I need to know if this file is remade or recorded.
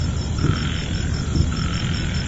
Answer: remade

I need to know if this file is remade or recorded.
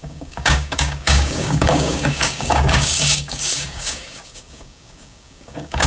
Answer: remade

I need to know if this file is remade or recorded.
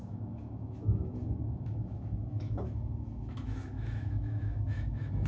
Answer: remade